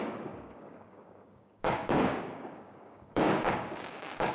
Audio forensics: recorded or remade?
remade